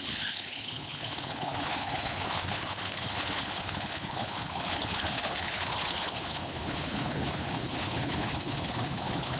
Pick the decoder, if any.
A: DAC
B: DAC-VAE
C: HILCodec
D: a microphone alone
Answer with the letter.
C